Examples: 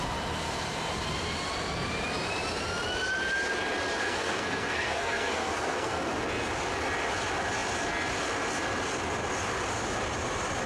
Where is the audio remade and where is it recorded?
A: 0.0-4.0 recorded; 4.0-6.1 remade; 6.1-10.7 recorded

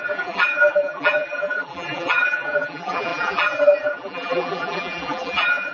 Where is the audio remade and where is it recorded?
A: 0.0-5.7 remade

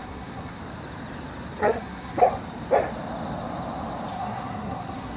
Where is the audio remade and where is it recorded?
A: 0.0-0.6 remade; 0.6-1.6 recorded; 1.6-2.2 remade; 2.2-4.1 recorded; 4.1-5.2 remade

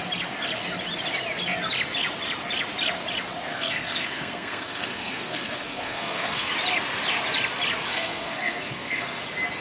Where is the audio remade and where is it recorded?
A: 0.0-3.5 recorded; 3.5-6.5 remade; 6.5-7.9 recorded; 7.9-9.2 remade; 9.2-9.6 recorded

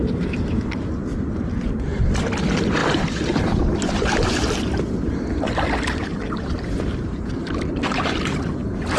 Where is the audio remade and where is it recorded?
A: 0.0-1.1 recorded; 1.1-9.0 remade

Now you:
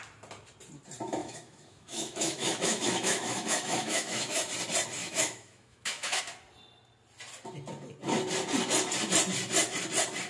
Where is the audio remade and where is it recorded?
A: 0.0-1.2 recorded; 1.2-4.5 remade; 4.5-5.0 recorded; 5.0-6.2 remade; 6.2-10.3 recorded